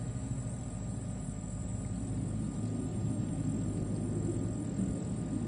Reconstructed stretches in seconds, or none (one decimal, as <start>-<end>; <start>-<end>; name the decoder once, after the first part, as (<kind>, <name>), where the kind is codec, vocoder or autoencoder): 0.0-3.3 (vocoder, BigVGAN v2)